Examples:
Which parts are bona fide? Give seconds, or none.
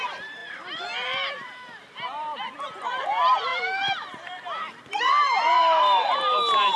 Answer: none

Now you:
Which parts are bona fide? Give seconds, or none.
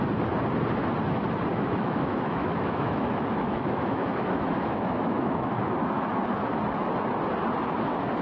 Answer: 0.0-1.5; 5.6-8.2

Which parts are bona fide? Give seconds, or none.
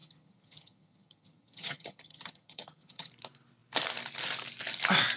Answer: 3.1-5.2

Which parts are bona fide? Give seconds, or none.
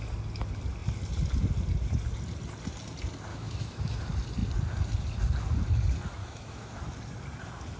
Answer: 0.0-3.3; 4.0-6.2; 6.8-7.8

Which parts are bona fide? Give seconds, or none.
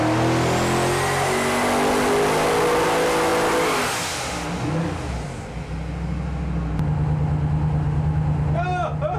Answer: 0.0-9.2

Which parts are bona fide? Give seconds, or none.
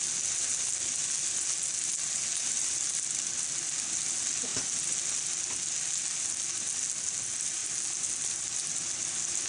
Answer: 0.0-9.5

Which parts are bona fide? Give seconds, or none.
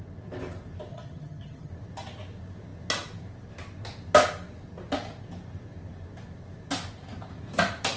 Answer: 0.0-0.9; 1.7-8.0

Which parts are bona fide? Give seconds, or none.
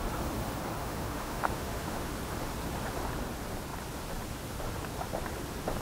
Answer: 0.0-0.8; 2.1-5.8